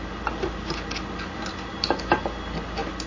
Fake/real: real